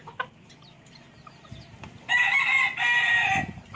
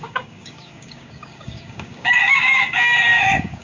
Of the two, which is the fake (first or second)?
second